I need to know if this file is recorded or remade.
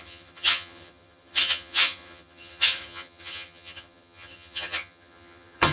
remade